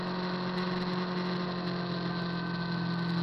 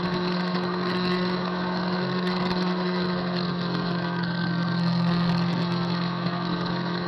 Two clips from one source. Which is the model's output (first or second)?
second